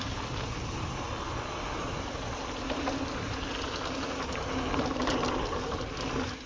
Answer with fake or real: real